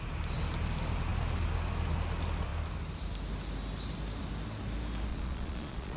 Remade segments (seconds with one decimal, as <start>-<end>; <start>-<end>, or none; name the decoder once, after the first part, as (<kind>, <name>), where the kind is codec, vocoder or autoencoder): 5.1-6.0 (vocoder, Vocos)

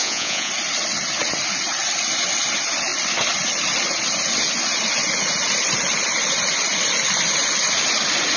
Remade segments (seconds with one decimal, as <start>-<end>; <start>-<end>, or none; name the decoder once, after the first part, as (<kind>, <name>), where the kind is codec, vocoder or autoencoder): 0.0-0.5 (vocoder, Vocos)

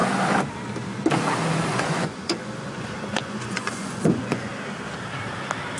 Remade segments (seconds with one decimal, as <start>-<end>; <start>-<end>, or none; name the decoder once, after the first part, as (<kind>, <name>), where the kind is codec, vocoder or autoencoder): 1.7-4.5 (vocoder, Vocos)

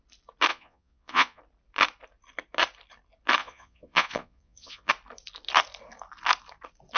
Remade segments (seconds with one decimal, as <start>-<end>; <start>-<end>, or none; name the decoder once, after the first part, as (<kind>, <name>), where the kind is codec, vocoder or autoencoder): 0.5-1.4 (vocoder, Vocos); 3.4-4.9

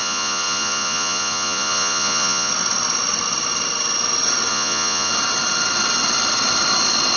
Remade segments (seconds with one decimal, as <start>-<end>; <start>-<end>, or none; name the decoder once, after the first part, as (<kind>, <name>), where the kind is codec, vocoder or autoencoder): 0.0-2.5 (vocoder, Vocos); 4.5-5.1

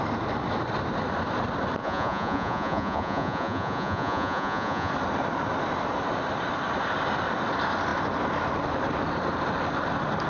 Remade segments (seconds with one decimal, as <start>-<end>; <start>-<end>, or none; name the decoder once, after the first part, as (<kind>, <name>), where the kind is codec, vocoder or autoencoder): 1.8-4.9 (vocoder, Vocos)

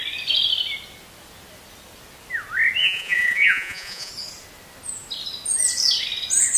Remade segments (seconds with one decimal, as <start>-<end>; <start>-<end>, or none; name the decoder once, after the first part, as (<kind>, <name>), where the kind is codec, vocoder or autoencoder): 2.8-4.1 (vocoder, Vocos)